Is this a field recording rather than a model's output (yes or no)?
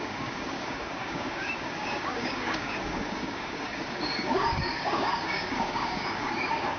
no